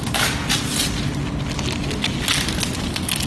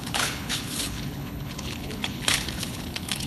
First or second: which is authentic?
first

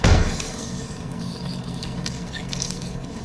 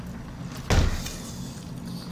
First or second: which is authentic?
second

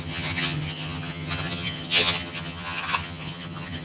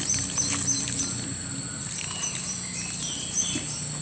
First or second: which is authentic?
second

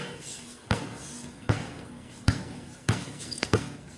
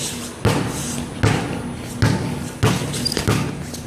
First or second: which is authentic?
second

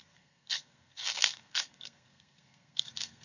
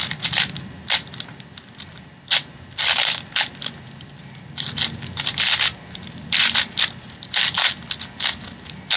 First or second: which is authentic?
second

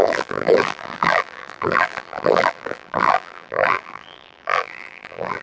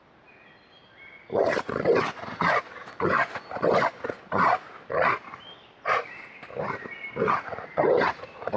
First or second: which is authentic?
second